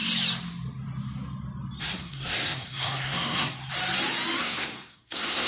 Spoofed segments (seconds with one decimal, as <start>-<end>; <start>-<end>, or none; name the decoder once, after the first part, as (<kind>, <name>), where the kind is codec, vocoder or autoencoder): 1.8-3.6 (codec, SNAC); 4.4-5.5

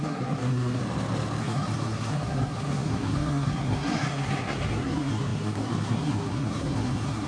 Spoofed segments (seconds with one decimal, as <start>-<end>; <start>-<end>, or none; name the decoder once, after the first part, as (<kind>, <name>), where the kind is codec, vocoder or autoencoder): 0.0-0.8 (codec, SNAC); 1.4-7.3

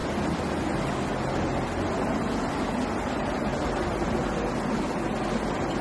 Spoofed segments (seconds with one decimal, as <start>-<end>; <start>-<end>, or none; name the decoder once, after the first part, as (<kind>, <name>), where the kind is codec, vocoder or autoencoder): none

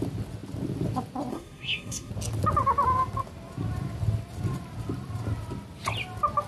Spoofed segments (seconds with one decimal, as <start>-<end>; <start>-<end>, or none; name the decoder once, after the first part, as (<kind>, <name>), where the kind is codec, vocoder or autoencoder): 1.3-2.1 (codec, SNAC)

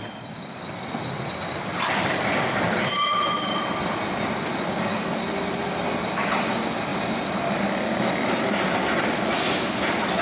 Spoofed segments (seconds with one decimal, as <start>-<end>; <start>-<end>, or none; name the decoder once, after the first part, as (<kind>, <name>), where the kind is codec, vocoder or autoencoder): none

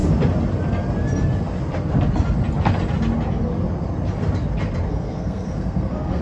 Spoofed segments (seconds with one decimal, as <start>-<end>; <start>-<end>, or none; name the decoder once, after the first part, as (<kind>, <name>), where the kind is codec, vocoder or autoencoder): 4.9-6.2 (codec, SNAC)